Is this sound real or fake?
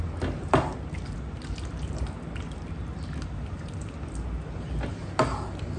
real